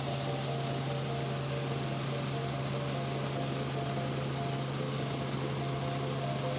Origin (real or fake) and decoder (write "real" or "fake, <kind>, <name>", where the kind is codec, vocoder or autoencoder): real